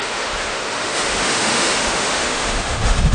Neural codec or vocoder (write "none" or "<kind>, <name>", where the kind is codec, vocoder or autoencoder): autoencoder, DAC-VAE